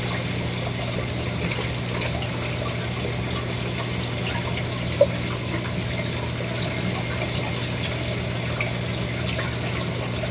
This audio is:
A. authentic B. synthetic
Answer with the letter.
A